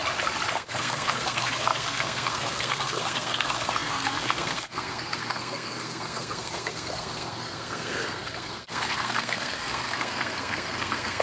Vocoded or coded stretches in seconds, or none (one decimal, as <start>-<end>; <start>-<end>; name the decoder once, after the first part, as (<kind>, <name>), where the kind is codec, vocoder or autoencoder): 0.5-11.2 (codec, SNAC)